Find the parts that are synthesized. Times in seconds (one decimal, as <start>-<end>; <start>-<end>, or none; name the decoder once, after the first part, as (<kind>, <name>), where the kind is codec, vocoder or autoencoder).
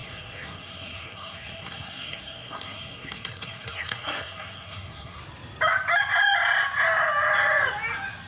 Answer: 0.0-5.2 (codec, SNAC)